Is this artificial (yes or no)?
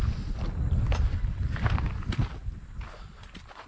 no